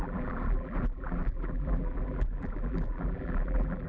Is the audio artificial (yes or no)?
yes